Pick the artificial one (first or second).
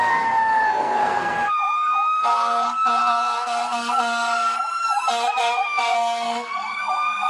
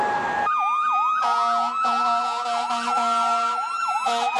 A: first